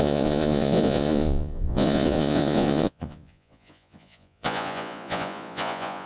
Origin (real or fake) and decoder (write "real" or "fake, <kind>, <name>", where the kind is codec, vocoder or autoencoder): fake, vocoder, Vocos